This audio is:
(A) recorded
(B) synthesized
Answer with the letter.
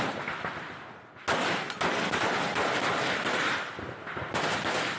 A